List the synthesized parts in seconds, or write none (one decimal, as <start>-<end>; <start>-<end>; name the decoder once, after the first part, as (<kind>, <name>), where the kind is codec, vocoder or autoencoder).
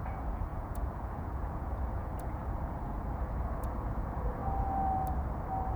0.0-4.4 (vocoder, Vocos)